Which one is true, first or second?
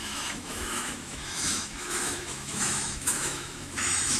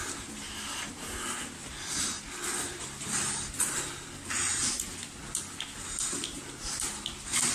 second